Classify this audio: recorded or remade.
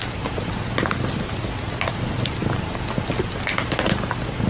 recorded